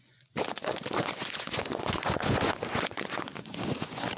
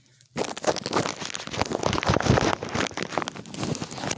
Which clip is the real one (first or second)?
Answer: second